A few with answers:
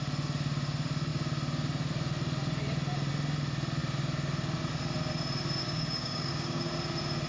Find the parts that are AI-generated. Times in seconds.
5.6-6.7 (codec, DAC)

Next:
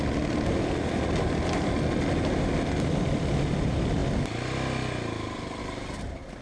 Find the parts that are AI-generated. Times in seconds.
none